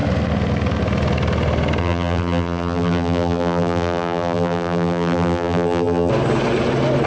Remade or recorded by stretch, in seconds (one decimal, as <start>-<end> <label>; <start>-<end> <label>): 0.0-1.8 recorded; 1.8-6.1 remade; 6.1-7.1 recorded